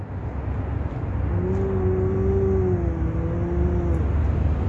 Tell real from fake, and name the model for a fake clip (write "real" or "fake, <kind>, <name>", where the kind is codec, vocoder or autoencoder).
real